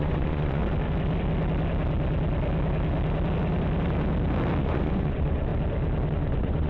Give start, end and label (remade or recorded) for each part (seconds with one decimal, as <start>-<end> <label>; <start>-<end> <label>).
0.0-0.6 remade; 0.6-4.6 recorded; 4.6-5.5 remade; 5.5-6.1 recorded; 6.1-6.7 remade